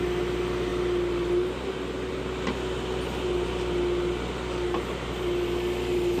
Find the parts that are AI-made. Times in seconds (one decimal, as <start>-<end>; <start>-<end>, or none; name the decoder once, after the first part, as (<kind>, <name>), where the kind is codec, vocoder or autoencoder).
none